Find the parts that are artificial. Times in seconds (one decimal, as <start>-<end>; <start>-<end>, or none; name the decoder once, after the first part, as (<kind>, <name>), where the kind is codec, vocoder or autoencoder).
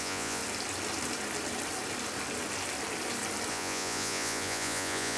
0.0-0.4 (vocoder, Vocos); 3.5-5.2